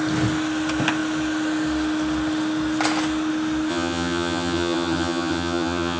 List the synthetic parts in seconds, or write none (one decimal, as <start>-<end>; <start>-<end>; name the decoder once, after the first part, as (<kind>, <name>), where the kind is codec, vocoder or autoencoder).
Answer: 3.7-6.0 (vocoder, HiFi-GAN)